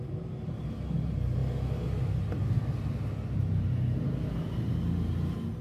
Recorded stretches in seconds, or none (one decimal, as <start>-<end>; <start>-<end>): 0.0-5.6